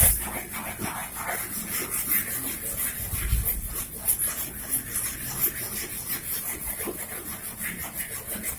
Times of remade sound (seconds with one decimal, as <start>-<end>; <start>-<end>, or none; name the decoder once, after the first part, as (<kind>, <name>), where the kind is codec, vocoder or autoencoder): none